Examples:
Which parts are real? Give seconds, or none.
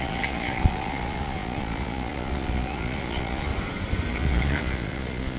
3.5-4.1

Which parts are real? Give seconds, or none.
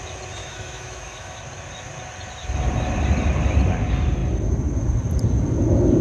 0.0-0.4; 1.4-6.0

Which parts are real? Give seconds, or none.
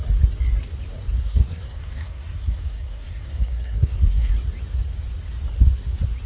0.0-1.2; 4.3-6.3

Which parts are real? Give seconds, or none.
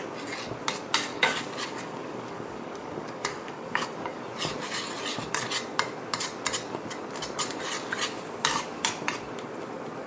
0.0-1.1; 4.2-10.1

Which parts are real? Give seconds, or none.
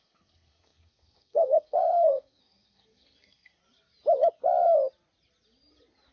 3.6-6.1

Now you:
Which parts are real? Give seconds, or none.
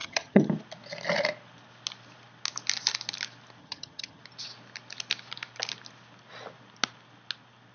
0.5-3.6; 4.2-7.7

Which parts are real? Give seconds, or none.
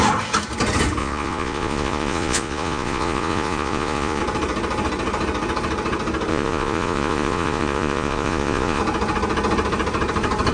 0.0-1.0; 4.2-6.3; 8.8-10.5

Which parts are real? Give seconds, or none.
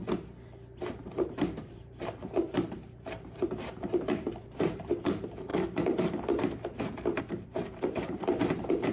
0.0-0.8; 5.5-7.2